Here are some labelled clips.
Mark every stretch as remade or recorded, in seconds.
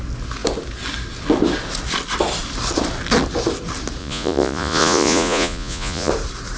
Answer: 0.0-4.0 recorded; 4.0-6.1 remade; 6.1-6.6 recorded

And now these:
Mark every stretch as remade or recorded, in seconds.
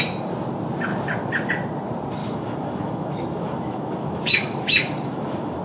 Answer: 0.0-2.2 recorded; 2.2-5.6 remade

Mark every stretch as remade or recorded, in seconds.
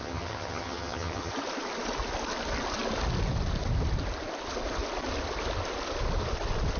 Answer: 0.0-1.3 remade; 1.3-6.8 recorded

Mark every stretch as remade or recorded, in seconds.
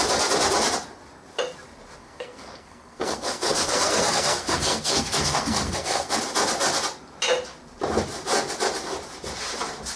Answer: 0.0-2.0 recorded; 2.0-6.2 remade; 6.2-10.0 recorded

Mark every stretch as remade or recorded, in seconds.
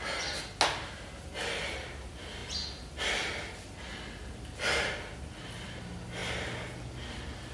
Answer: 0.0-7.5 recorded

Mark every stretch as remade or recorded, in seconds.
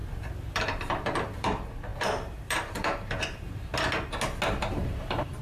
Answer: 0.0-3.7 remade; 3.7-4.5 recorded; 4.5-5.4 remade